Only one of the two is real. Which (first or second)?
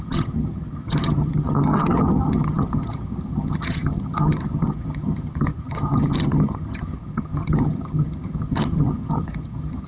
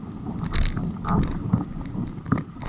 second